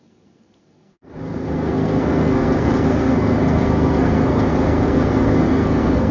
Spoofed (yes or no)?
yes